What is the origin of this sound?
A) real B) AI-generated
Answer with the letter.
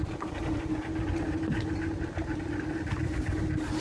A